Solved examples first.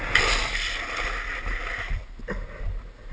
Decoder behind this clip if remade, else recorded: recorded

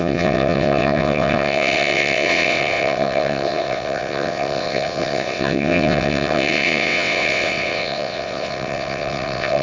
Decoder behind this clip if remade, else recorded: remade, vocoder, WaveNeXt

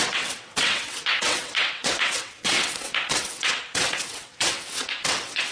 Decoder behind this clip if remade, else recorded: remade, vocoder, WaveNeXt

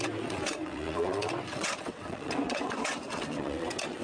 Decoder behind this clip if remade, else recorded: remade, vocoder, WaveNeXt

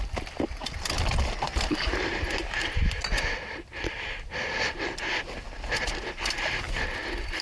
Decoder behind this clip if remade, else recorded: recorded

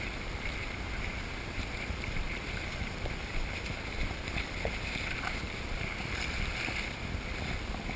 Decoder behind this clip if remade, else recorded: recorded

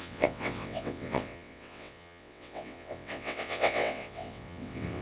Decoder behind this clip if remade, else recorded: remade, vocoder, WaveNeXt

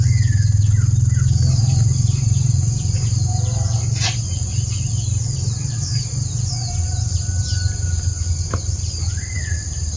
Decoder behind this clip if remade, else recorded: recorded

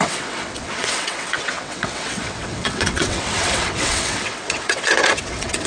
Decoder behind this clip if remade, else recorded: remade, vocoder, WaveNeXt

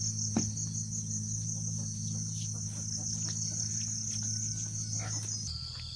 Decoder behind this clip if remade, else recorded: recorded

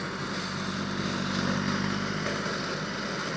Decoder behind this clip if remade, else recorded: recorded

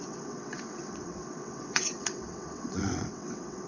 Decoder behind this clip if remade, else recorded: remade, vocoder, WaveNeXt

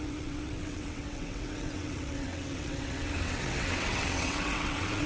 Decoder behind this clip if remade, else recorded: remade, vocoder, WaveNeXt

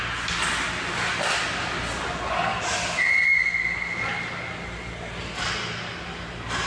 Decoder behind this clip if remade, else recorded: recorded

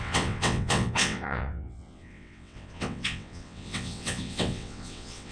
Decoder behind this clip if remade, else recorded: remade, vocoder, WaveNeXt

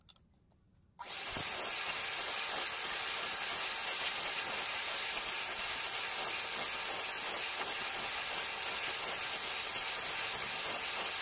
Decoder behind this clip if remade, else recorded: recorded